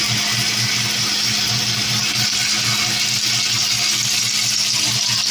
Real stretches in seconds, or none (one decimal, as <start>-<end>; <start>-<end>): 0.0-5.3